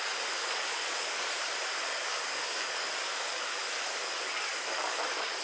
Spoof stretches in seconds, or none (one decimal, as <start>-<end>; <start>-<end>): 0.4-1.5; 1.9-5.4